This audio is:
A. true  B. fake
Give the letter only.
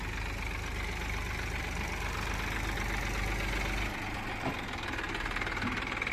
A